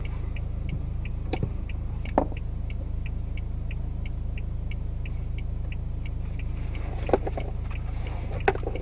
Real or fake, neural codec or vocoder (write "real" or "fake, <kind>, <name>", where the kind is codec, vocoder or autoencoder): real